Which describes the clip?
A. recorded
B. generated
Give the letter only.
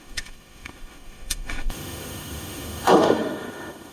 B